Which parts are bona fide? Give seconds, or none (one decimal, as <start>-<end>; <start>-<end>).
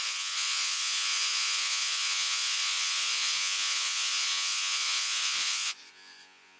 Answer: none